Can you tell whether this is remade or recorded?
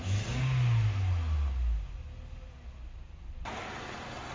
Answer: recorded